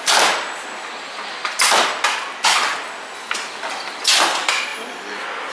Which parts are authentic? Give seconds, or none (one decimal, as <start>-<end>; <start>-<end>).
0.0-5.5

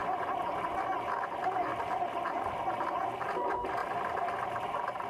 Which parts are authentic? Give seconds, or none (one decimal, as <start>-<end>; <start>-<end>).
0.0-3.8

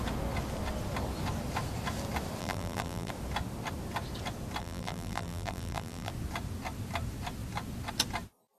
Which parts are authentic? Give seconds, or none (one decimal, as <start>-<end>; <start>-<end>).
0.0-2.4; 3.1-4.6; 6.1-8.6

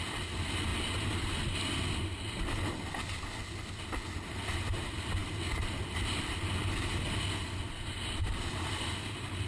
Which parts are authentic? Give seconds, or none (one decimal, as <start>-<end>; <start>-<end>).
0.0-9.5

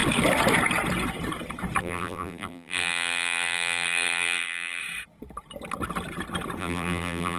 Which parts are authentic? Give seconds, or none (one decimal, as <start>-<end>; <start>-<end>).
0.0-1.8; 4.8-6.6

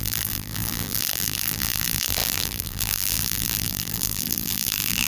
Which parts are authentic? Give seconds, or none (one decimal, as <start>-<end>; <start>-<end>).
none

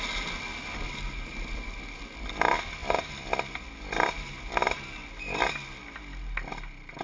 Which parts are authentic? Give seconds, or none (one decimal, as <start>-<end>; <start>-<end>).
0.0-7.0